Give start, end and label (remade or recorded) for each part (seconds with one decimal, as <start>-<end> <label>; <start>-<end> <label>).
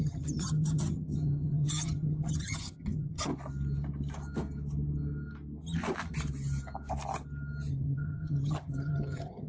0.0-3.3 remade; 3.3-7.7 recorded; 7.7-9.5 remade